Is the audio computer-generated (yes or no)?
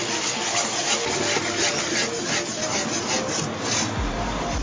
no